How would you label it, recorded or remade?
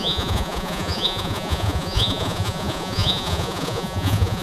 remade